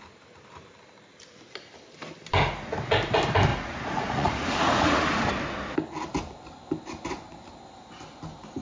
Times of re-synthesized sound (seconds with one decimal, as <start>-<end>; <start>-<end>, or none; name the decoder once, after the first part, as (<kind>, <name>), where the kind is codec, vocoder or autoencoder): 3.5-5.3 (vocoder, Vocos)